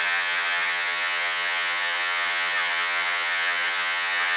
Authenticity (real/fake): fake